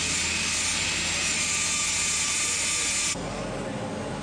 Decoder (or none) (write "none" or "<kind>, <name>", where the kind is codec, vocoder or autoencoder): none